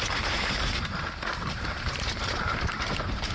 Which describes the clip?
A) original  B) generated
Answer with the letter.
B